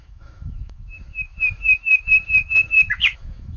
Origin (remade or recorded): remade